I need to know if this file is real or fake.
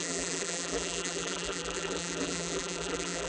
fake